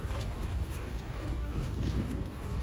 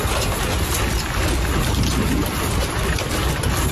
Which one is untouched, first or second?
second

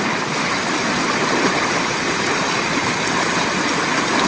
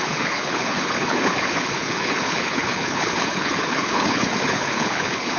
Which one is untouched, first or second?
first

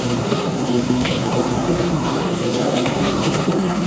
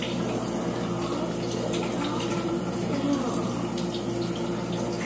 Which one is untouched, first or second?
second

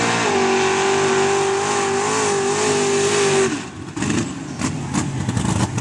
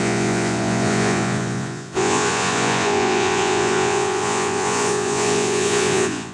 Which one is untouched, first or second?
first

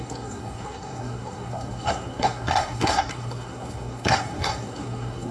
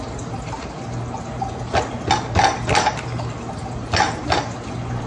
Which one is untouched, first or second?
second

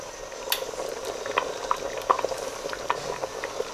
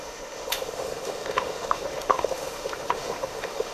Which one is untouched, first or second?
first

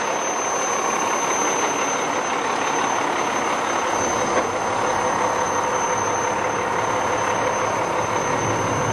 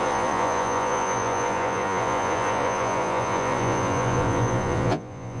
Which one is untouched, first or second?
first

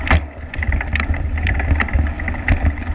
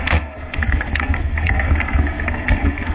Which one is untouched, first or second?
first